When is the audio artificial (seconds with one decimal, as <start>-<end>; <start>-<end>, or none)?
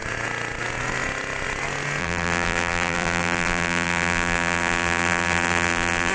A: 2.0-6.1